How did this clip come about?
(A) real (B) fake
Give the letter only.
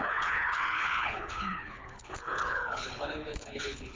B